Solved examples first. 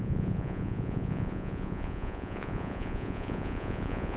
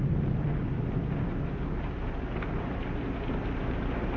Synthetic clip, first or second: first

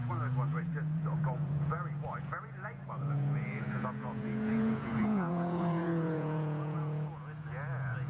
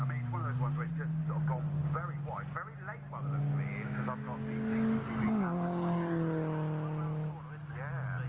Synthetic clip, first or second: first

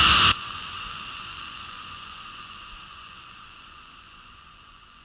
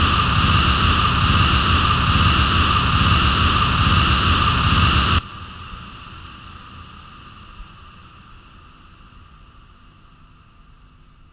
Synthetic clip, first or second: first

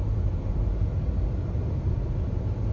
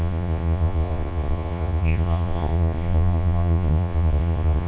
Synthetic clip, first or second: second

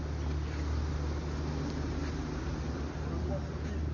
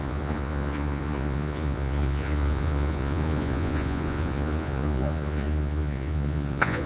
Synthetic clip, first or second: second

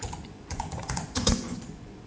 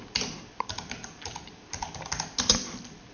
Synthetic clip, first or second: first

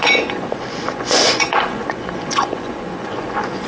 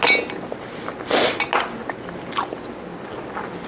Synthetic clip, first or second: first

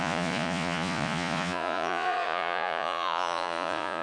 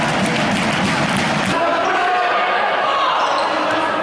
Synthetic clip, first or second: first